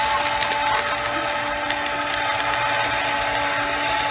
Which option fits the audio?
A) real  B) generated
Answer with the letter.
A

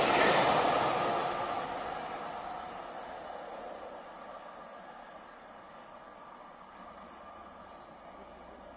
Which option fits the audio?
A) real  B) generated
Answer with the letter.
A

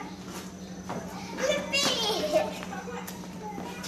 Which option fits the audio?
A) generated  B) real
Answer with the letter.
B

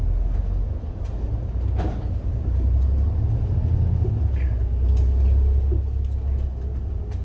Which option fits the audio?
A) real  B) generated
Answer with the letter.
A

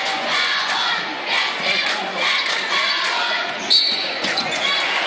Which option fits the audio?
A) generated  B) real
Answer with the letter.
A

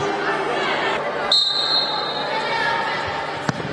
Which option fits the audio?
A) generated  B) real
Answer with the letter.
B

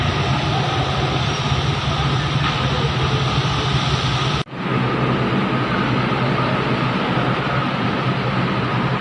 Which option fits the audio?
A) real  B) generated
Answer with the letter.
A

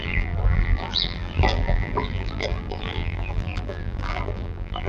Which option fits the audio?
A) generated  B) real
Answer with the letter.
A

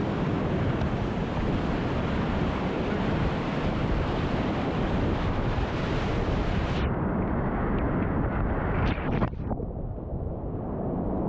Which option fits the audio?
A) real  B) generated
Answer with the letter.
B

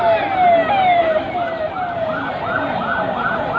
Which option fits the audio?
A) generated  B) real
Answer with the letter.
B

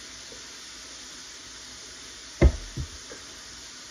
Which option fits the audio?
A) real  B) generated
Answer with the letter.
A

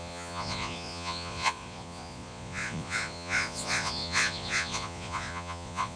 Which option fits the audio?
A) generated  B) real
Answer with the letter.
A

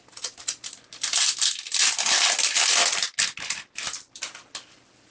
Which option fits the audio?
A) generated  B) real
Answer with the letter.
B